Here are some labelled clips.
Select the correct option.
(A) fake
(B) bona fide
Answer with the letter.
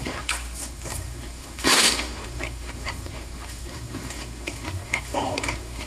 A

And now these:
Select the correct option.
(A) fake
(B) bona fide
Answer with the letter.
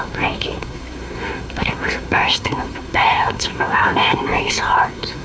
A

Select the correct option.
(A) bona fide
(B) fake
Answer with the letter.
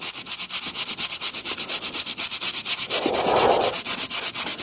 A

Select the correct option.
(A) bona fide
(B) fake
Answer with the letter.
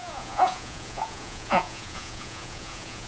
B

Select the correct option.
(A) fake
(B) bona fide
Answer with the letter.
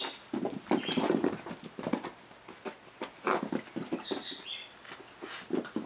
B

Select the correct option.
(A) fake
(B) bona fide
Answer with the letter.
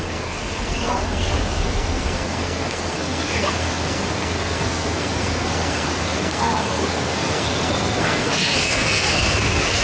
A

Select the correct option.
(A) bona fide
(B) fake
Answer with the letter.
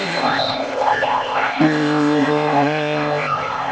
B